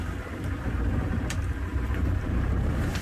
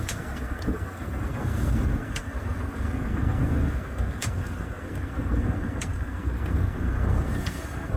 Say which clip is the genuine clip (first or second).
first